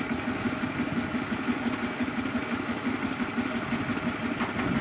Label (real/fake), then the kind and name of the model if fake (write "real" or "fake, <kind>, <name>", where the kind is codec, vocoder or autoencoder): real